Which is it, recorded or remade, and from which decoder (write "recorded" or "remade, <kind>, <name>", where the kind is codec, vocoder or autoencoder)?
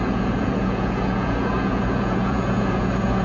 remade, vocoder, Vocos